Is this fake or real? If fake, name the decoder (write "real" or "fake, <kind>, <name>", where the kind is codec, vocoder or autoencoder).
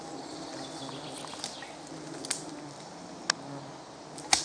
real